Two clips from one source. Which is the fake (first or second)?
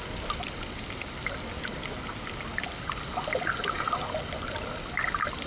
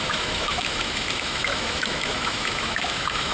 second